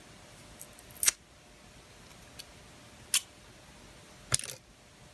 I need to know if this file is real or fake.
real